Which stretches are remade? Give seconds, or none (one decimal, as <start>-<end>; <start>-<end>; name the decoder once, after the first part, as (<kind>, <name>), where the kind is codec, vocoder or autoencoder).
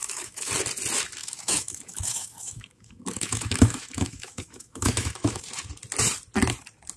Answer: 0.0-0.5 (autoencoder, DAC-VAE); 1.2-5.4